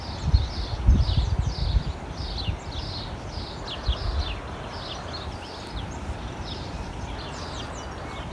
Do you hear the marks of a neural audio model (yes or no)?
no